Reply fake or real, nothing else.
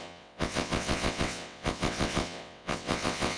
fake